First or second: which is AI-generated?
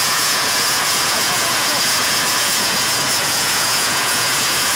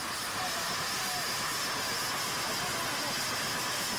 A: first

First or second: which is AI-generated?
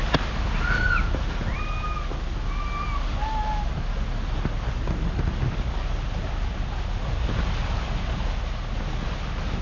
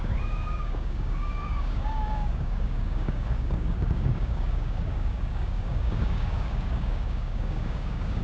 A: second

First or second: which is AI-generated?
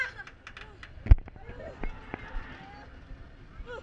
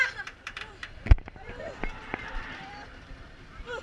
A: second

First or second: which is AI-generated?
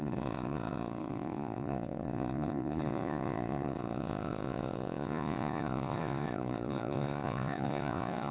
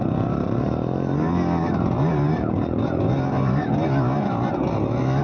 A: first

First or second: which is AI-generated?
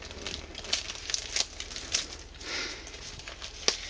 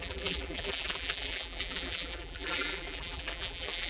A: second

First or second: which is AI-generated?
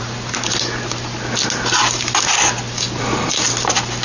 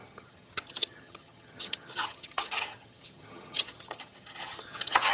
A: second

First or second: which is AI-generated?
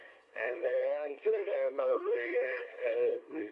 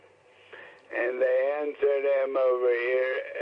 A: first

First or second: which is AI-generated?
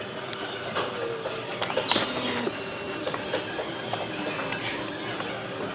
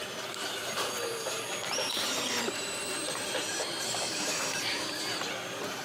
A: second